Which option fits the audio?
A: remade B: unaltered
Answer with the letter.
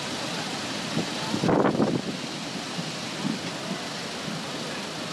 B